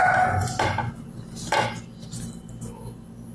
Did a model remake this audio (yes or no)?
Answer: no